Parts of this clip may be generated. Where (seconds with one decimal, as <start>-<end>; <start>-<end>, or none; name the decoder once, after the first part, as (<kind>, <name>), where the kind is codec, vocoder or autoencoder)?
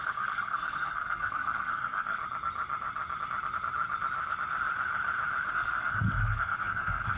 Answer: 0.0-2.2 (codec, SNAC); 5.5-7.2